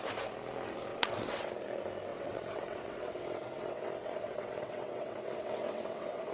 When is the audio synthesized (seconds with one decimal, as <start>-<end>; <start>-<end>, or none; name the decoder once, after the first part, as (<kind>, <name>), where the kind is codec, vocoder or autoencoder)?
0.9-1.5 (vocoder, WaveNeXt); 2.1-6.3